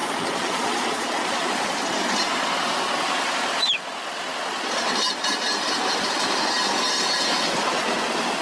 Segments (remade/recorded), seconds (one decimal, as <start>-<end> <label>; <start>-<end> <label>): 0.0-1.5 remade; 1.5-8.4 recorded